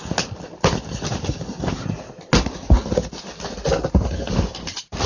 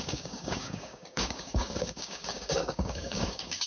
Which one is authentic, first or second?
first